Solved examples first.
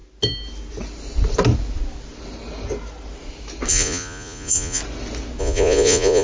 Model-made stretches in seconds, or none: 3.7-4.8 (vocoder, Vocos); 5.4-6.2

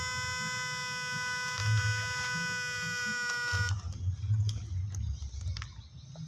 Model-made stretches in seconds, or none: none

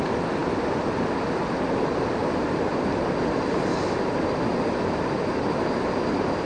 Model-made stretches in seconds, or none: none

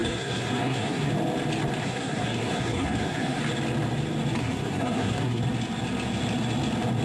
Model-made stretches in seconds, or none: 0.0-1.1 (codec, SNAC); 1.8-3.4; 4.4-5.4